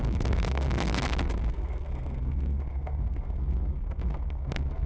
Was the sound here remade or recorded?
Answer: remade